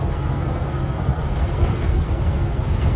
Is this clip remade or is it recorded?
remade